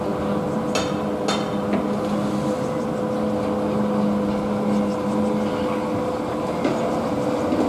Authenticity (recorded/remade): recorded